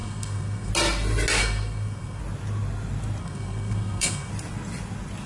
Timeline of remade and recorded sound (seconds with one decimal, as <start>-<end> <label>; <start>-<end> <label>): 0.0-0.7 remade; 0.7-1.4 recorded; 1.4-2.2 remade; 2.2-3.2 recorded; 3.2-4.3 remade; 4.3-5.3 recorded